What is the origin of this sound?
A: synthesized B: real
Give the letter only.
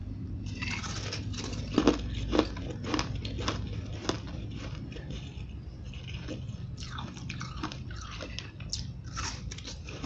B